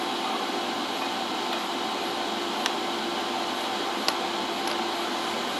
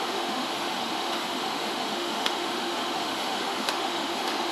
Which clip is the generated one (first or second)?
second